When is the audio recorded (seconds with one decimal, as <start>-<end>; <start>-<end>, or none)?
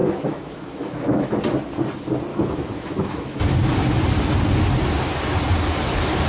1.3-2.3; 3.4-6.3